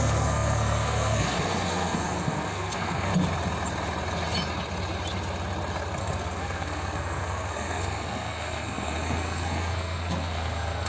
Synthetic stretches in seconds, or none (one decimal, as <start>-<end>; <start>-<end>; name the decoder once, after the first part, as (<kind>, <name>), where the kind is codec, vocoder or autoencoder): 0.0-3.1 (codec, SNAC); 6.0-10.9

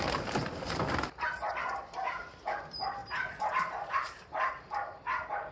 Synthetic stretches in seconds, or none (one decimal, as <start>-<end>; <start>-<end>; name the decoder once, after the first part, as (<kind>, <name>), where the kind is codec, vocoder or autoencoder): 3.0-4.5 (vocoder, BigVGAN v2)

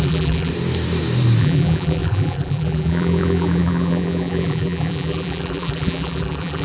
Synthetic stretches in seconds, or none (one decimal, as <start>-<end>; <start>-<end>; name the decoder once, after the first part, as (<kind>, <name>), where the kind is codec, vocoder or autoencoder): 0.0-0.5 (vocoder, BigVGAN v2); 1.4-6.6

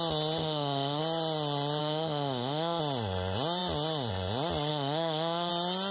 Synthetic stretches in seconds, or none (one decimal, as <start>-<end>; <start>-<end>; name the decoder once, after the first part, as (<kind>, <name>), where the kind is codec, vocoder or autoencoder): 0.4-1.0 (autoencoder, DAC-VAE); 1.8-2.8; 4.7-5.5

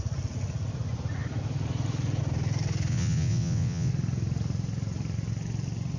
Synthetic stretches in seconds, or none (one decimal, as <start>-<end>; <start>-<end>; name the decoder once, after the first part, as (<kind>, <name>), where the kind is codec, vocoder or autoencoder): 2.9-3.9 (vocoder, WaveNeXt)

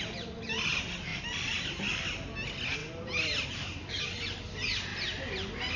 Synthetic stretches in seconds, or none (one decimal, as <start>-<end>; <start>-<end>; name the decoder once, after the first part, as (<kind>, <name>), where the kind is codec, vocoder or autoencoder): none

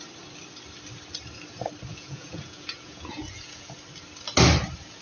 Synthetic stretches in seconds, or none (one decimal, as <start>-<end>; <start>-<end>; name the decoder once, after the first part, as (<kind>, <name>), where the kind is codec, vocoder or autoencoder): 1.9-3.7 (vocoder, Vocos)

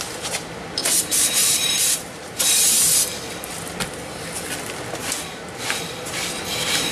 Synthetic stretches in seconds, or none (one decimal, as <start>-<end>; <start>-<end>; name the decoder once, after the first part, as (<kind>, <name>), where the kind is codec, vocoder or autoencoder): 0.8-2.4 (vocoder, BigVGAN v2)